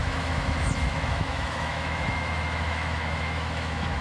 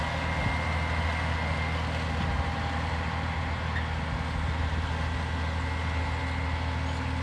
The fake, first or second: first